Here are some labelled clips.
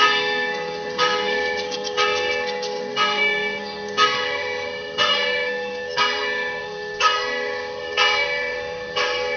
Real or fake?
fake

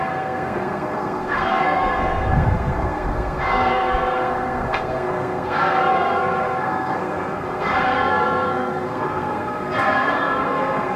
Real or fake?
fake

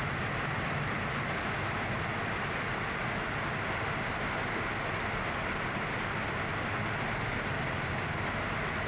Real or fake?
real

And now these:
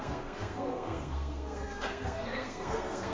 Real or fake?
fake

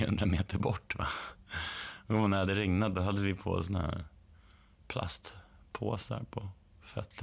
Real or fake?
real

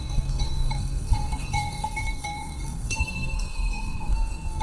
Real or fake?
fake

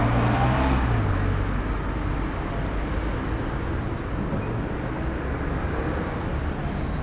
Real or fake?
real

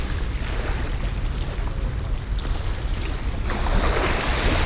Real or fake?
real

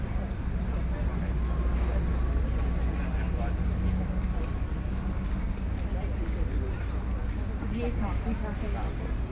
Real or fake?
real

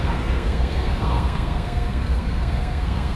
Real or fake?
fake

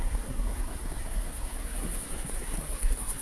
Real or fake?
fake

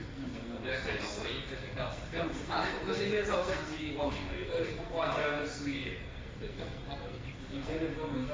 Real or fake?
fake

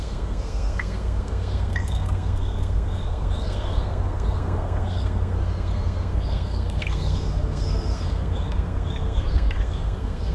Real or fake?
fake